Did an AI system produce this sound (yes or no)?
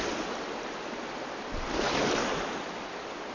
no